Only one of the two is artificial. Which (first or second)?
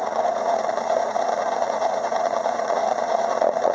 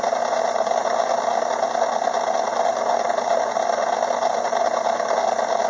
first